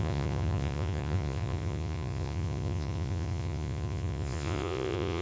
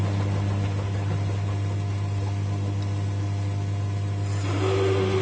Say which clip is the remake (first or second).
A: first